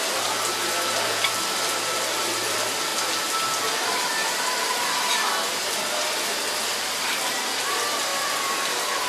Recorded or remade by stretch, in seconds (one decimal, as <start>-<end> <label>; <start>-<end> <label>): 0.0-8.1 recorded; 8.1-8.7 remade; 8.7-9.1 recorded

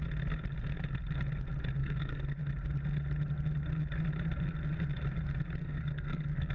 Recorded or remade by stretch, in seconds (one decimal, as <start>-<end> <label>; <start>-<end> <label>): 0.0-1.8 recorded; 1.8-2.4 remade; 2.4-5.6 recorded; 5.6-6.5 remade

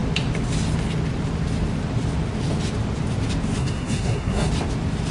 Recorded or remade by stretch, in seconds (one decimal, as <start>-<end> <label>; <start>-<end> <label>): 0.0-3.6 recorded; 3.6-4.5 remade; 4.5-5.1 recorded

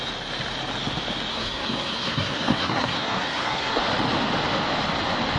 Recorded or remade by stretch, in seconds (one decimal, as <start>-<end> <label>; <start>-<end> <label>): 0.0-1.3 recorded; 1.3-3.8 remade; 3.8-5.4 recorded